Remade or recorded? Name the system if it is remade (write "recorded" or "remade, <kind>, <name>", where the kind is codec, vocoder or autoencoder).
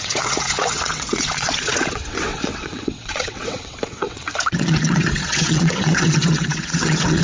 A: remade, vocoder, WaveNeXt